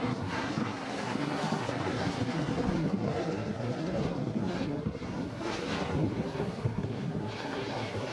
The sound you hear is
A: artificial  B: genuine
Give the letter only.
A